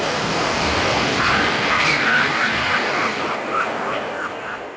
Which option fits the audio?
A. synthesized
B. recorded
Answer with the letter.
A